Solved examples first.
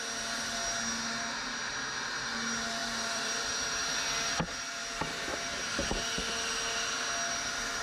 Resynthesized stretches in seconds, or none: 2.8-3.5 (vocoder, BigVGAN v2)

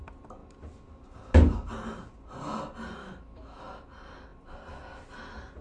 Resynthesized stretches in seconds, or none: 3.0-3.6 (autoencoder, DAC-VAE)

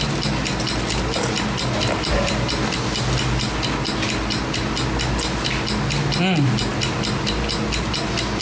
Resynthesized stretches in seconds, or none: none